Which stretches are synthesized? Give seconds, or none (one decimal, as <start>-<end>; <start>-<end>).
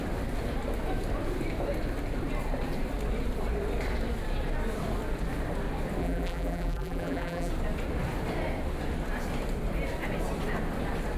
6.0-7.5